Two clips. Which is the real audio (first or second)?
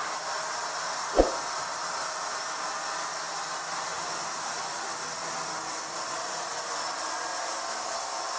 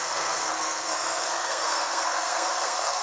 first